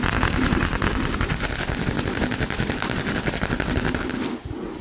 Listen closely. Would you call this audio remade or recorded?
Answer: recorded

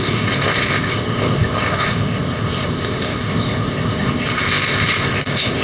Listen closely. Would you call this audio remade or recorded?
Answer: remade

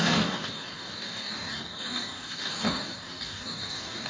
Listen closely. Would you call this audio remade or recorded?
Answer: remade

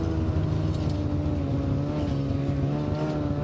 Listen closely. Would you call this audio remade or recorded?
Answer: recorded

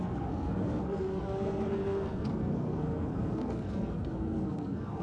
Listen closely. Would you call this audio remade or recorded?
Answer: remade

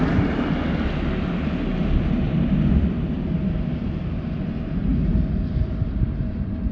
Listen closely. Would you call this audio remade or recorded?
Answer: recorded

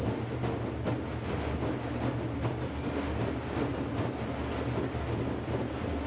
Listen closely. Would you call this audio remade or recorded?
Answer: recorded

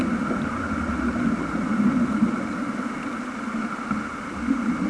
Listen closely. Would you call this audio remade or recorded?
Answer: recorded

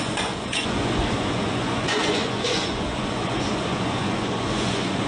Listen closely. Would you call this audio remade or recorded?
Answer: remade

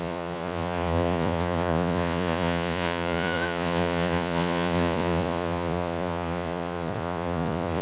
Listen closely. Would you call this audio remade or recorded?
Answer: remade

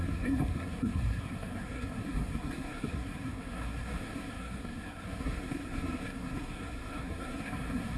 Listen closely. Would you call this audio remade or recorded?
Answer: remade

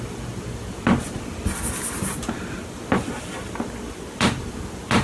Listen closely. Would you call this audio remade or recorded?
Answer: recorded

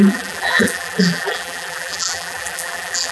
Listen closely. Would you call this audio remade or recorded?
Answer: remade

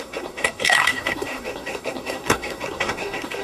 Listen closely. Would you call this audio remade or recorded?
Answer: remade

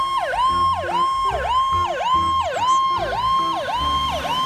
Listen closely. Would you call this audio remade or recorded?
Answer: recorded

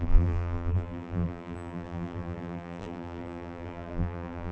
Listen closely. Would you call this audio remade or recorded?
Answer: remade